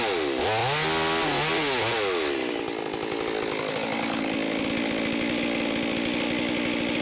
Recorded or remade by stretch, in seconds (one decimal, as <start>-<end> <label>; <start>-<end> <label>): 0.0-7.0 recorded